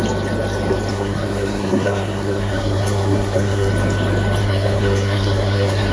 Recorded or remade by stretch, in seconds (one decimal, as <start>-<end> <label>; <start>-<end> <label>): 0.0-0.9 recorded; 0.9-3.7 remade; 3.7-4.4 recorded; 4.4-5.9 remade